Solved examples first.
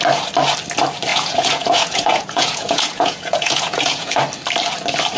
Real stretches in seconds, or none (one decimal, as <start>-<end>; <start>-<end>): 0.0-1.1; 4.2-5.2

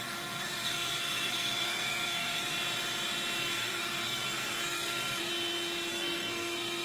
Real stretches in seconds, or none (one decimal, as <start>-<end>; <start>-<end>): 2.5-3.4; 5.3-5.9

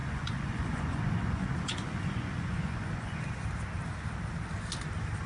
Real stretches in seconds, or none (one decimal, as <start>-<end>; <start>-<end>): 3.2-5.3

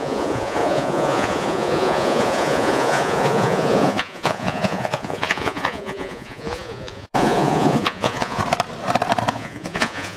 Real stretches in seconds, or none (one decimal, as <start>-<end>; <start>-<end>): 8.4-9.3

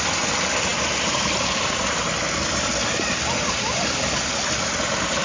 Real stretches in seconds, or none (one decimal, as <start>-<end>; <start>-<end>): 0.0-5.2

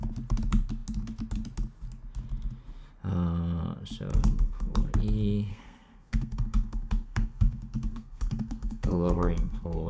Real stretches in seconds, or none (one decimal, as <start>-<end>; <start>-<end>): 0.0-4.1; 4.9-5.5

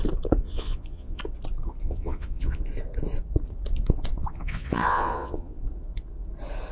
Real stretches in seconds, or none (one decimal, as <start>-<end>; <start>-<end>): 0.0-0.4; 1.2-1.8; 2.6-4.2; 5.6-6.7